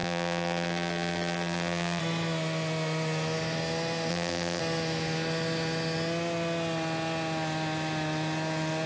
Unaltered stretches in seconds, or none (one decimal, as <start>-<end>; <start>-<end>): 2.0-4.1; 4.6-8.9